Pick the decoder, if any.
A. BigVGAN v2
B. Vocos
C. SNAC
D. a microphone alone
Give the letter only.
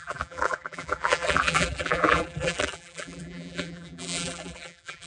A